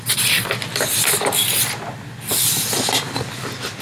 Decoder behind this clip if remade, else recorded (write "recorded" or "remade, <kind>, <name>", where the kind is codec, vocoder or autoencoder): recorded